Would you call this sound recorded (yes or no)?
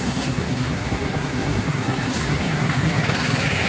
no